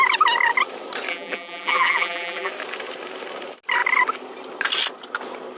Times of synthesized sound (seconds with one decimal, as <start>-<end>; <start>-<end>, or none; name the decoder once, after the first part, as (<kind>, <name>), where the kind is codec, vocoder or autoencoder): 1.1-2.5 (vocoder, BigVGAN v2)